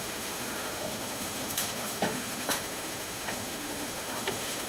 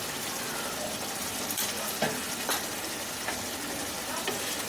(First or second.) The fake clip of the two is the first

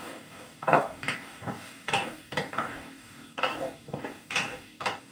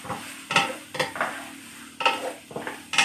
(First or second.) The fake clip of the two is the first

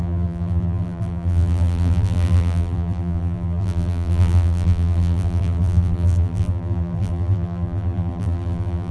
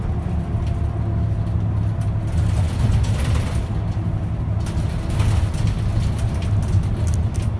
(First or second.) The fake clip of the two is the first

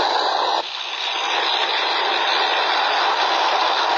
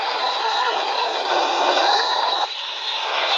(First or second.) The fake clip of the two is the second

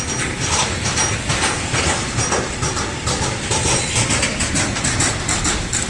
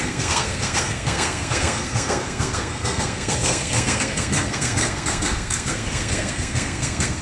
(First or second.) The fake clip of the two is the second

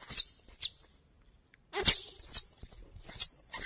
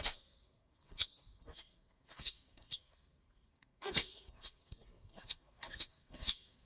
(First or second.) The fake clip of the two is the second